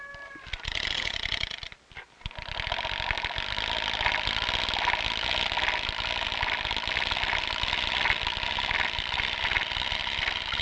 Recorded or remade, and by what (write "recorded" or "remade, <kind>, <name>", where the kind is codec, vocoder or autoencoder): recorded